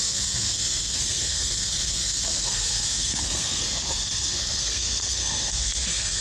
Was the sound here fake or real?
fake